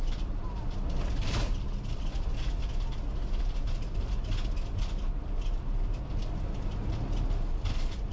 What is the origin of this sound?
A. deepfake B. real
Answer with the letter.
B